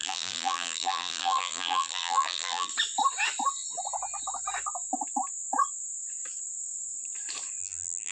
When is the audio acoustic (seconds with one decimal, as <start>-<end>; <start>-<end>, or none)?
2.7-7.6